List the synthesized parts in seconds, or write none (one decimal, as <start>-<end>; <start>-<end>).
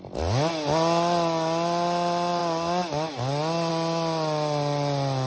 none